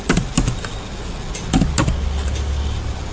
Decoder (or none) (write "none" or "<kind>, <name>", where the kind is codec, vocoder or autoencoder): none